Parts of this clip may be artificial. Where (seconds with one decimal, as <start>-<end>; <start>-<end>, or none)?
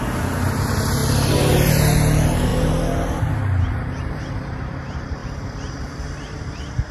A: 1.0-1.7; 2.5-3.3